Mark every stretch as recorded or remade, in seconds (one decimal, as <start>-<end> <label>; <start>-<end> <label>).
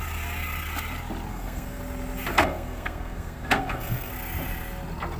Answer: 0.0-1.3 recorded; 1.3-1.8 remade; 1.8-2.3 recorded; 2.3-4.1 remade; 4.1-5.2 recorded